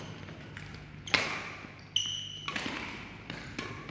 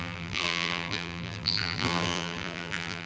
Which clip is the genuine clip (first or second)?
first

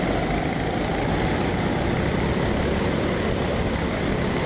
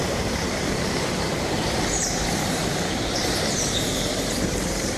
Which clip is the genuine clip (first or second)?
first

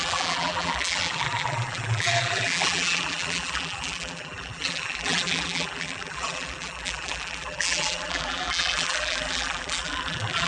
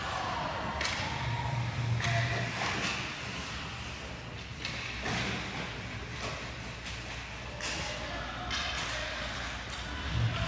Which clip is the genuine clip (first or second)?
second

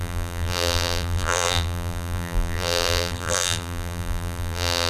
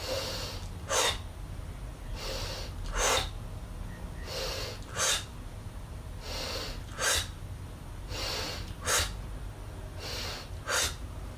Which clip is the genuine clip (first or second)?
second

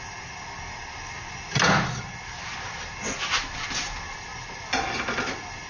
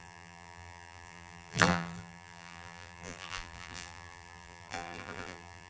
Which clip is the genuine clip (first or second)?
first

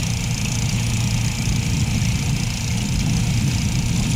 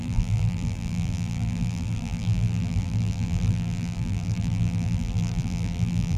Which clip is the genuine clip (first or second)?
first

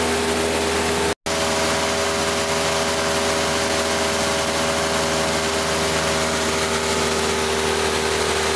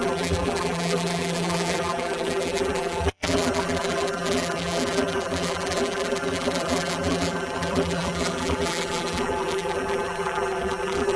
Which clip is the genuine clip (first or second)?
first